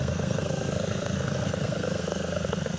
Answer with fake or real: fake